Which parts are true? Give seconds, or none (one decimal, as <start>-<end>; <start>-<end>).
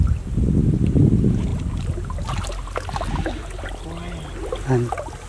0.0-5.3